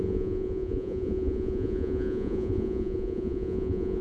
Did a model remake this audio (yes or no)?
yes